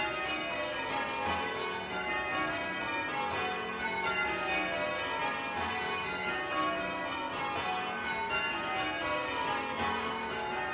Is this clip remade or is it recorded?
recorded